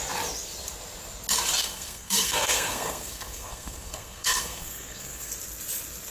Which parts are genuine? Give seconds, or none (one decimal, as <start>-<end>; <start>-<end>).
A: 0.0-1.6; 5.3-6.1